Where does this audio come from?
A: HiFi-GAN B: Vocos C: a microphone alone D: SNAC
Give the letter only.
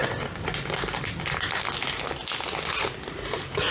C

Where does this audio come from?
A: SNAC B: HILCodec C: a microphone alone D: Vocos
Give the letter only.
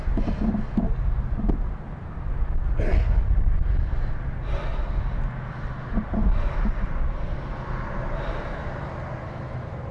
C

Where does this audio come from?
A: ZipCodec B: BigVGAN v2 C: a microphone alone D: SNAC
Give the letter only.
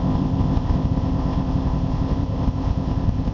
A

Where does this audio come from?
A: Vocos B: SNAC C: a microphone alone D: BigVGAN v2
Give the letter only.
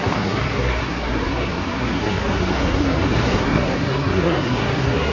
B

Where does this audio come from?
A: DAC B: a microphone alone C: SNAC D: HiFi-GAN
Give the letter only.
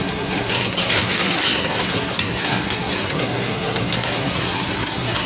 C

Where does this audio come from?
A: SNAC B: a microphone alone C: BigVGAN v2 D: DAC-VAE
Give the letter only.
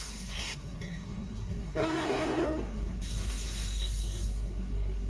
A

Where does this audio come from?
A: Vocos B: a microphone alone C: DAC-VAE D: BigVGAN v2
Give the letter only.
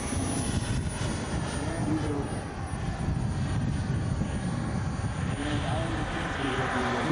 B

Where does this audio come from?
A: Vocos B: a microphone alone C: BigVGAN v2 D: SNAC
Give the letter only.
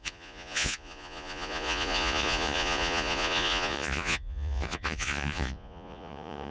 A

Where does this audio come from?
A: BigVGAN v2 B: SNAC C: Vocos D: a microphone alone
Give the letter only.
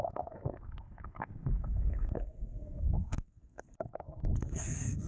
B